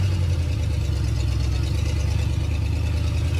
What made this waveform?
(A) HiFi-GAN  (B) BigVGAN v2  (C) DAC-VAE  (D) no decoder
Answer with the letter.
D